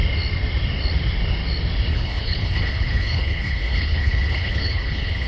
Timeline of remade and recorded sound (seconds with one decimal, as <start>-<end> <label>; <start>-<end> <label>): 0.0-1.9 recorded; 1.9-5.3 remade

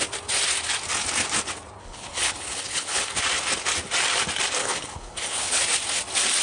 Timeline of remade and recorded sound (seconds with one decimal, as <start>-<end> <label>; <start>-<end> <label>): 0.0-1.8 recorded; 1.8-3.2 remade; 3.2-4.6 recorded; 4.6-5.6 remade; 5.6-6.4 recorded

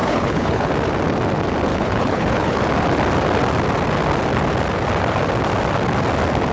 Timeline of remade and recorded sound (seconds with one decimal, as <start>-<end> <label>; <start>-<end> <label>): 0.0-0.7 remade; 0.7-1.7 recorded; 1.7-2.6 remade; 2.6-6.5 recorded

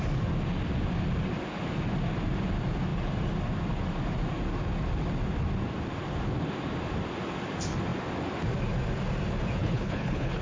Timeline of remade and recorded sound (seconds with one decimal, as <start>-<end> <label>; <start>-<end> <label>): 0.0-9.6 recorded; 9.6-10.4 remade

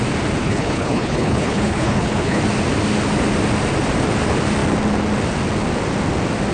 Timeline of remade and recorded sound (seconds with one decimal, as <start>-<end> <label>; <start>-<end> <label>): 0.0-0.4 recorded; 0.4-2.4 remade; 2.4-6.5 recorded